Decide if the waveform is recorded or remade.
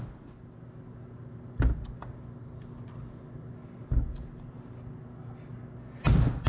recorded